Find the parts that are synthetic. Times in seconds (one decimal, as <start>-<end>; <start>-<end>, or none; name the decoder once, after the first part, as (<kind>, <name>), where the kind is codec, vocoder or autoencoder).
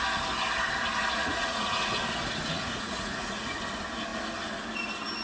1.2-2.0 (vocoder, Vocos); 2.4-3.6